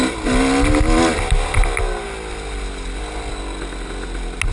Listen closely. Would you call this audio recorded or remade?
recorded